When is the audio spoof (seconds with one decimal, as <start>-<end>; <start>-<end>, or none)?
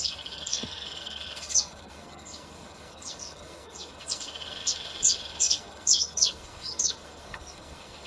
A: 0.0-8.1